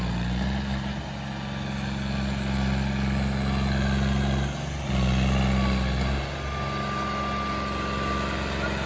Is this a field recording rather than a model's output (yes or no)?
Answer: yes